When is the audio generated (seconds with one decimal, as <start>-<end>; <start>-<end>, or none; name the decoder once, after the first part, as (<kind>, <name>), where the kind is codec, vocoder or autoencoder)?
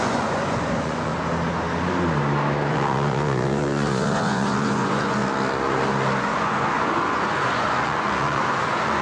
0.0-1.1 (vocoder, Vocos); 2.7-5.2; 6.2-9.0